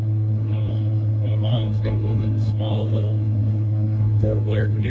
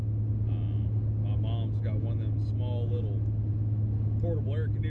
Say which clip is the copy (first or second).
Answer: first